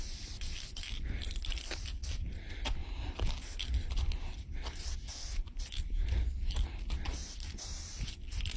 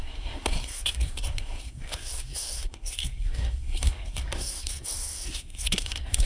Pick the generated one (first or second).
second